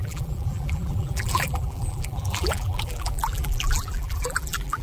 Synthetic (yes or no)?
yes